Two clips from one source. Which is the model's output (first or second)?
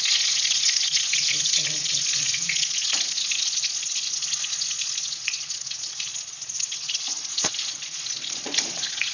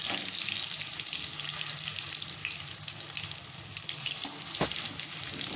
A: first